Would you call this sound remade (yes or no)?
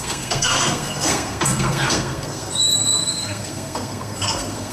yes